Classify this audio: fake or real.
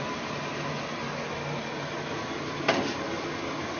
real